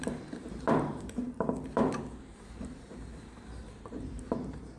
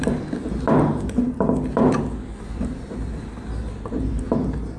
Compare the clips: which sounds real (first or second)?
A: second